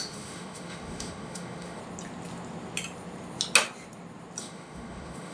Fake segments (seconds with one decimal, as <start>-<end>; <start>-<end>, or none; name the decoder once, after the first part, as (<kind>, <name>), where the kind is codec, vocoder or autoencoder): 0.0-1.8 (autoencoder, DAC-VAE); 4.4-5.3

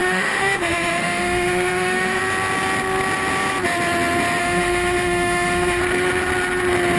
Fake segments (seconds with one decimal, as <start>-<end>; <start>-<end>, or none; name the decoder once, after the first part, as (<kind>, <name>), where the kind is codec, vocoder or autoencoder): 0.0-2.2 (autoencoder, DAC-VAE); 4.4-5.8

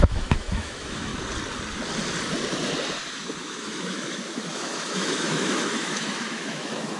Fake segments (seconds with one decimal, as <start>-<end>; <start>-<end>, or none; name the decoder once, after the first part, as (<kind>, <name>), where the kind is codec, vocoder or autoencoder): 0.0-1.1 (autoencoder, DAC-VAE); 3.4-7.0